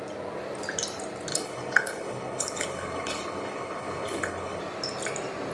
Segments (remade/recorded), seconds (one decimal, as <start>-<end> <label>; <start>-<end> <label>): 0.0-1.3 recorded; 1.3-4.6 remade; 4.6-5.5 recorded